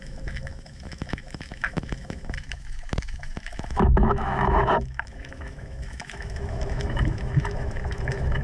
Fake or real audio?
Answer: fake